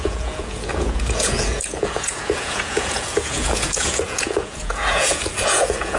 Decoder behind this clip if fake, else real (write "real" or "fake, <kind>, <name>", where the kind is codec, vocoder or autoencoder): fake, vocoder, Vocos